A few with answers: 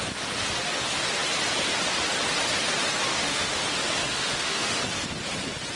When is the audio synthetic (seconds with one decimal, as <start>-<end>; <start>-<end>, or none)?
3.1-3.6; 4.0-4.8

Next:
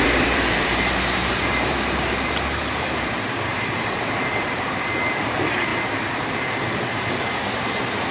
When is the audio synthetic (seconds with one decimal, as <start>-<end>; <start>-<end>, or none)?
0.0-5.7; 7.4-8.1

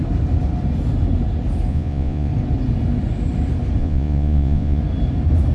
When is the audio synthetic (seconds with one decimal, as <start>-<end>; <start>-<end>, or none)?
1.7-2.3; 3.8-4.8